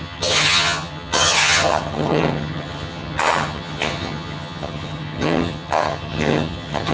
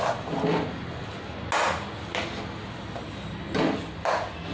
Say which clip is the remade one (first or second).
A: first